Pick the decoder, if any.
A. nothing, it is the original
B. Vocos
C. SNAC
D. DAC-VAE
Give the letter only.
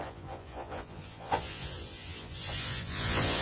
B